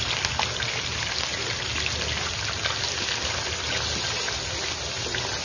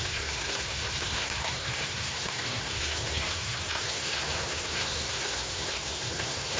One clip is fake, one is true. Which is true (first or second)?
first